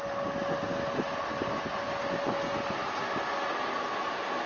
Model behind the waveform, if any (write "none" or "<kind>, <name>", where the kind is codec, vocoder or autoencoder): none